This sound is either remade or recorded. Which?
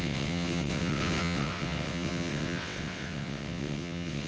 remade